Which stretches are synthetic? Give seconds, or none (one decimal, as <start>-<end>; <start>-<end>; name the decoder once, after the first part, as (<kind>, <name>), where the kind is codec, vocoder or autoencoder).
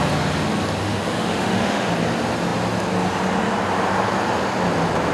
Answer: 0.8-1.9 (autoencoder, DAC-VAE)